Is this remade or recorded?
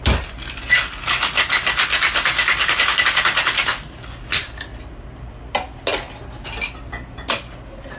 recorded